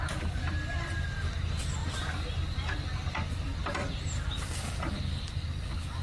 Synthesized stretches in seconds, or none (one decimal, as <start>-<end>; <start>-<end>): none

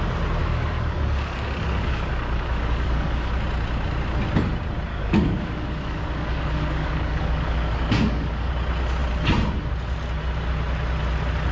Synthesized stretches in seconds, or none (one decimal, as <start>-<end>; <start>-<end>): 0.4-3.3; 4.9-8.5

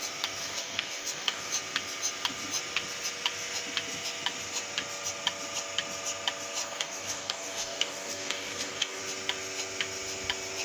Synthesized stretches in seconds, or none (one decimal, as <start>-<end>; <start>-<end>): 0.4-1.5; 6.6-9.0

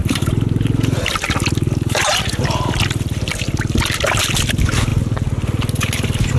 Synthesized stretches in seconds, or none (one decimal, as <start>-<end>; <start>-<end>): none

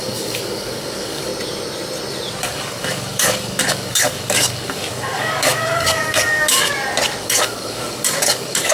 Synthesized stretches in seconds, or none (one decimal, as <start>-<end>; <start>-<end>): 0.0-1.3; 2.4-6.7; 7.2-8.7